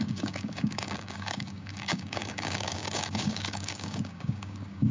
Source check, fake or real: fake